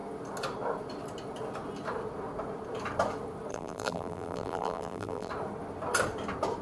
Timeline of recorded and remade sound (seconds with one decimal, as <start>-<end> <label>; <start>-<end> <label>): 0.0-3.5 recorded; 3.5-5.3 remade; 5.3-6.6 recorded